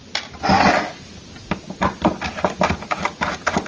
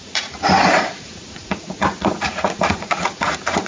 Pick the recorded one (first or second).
first